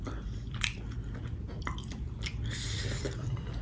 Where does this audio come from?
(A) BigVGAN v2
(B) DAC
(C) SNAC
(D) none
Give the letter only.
D